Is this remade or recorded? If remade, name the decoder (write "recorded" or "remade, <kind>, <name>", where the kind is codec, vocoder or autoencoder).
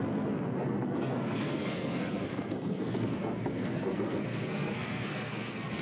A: remade, codec, SNAC